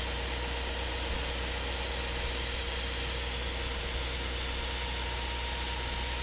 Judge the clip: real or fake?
real